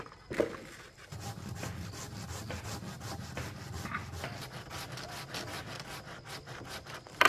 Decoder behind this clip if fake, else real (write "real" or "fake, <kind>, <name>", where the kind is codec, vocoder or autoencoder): real